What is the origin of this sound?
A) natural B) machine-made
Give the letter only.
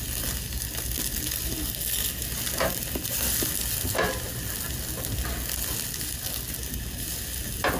A